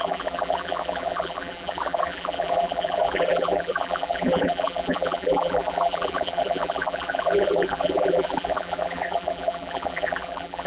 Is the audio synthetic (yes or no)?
yes